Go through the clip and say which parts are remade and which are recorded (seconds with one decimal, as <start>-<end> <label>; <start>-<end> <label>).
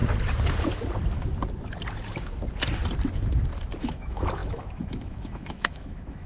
0.0-3.8 recorded; 3.8-6.3 remade